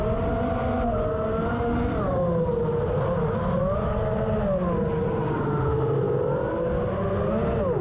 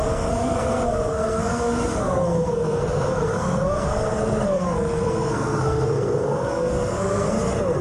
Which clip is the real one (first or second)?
first